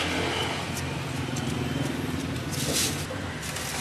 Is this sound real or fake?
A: real